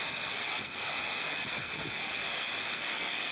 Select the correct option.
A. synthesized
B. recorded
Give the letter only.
A